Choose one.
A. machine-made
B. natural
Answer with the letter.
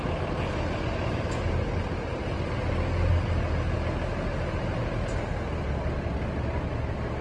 B